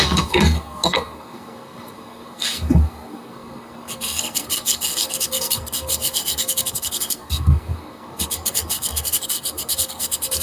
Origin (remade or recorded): remade